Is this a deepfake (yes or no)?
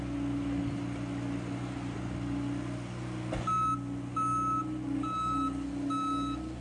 no